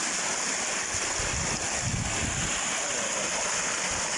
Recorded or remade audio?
recorded